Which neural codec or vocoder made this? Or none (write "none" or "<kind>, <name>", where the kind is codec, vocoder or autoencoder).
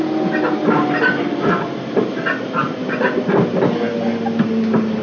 none